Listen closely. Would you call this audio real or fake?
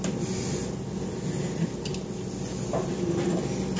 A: real